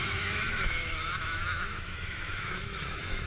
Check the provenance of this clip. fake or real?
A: fake